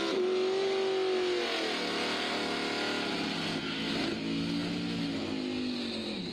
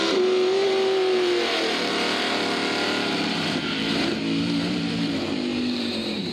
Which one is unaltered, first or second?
first